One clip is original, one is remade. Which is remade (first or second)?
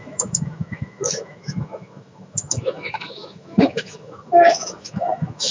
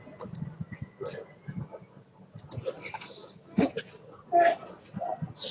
first